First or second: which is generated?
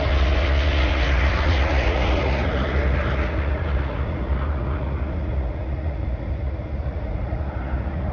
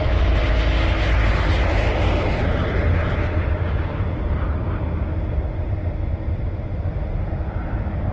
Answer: first